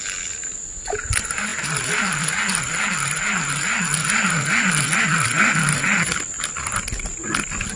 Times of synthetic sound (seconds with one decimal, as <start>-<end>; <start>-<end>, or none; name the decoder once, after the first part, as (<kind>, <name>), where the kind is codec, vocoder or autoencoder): none